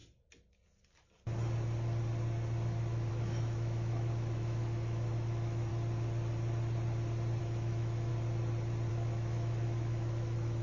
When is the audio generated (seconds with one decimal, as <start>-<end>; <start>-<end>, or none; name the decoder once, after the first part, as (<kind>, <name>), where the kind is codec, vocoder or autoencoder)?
3.1-5.7 (autoencoder, DAC-VAE); 7.4-8.1; 8.9-10.6

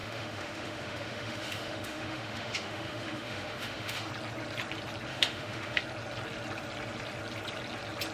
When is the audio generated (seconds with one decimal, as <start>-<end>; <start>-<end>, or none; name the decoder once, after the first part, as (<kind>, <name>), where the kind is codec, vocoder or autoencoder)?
0.0-4.1 (autoencoder, DAC-VAE); 5.1-5.8

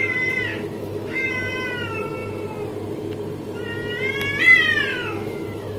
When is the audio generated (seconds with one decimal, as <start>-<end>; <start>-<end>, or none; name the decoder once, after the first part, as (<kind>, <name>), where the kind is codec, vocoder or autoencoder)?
0.5-1.3 (autoencoder, DAC-VAE); 4.9-5.8

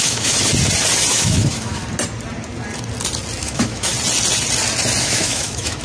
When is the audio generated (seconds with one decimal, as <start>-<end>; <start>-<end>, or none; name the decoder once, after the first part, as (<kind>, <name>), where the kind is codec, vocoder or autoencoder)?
0.0-0.5 (autoencoder, DAC-VAE); 1.1-1.8; 3.4-3.9; 5.0-5.8

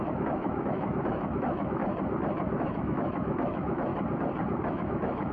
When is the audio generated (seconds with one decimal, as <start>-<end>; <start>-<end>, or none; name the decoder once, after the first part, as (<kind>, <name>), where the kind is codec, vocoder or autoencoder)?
0.0-1.8 (autoencoder, DAC-VAE); 2.6-3.9; 4.7-5.3

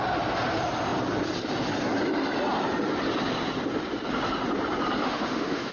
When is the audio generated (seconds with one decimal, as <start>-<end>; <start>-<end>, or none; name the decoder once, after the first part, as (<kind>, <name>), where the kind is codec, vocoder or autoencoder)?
5.0-5.7 (autoencoder, DAC-VAE)

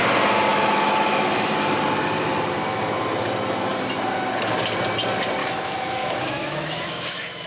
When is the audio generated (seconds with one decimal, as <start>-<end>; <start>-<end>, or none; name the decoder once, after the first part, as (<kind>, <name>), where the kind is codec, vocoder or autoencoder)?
0.5-1.5 (autoencoder, DAC-VAE); 5.4-7.5